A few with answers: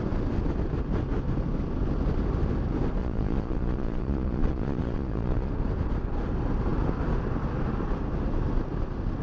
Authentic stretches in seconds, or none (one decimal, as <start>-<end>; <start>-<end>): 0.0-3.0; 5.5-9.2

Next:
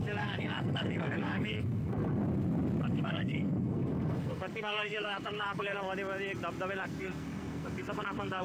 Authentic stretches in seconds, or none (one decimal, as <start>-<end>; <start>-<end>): 2.2-2.8; 5.9-6.7

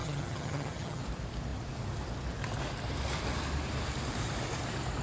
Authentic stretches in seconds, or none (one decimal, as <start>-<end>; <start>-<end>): 1.0-5.0